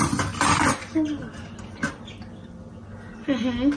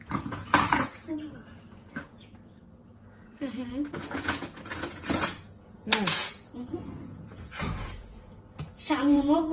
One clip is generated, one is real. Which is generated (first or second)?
second